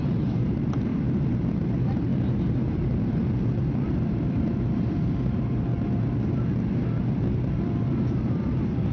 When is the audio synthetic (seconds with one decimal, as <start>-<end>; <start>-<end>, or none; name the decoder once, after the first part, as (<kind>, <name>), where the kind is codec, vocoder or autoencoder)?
0.0-0.9 (vocoder, BigVGAN v2); 1.5-5.7; 8.2-8.9